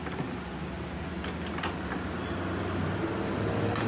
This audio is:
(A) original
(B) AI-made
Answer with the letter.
A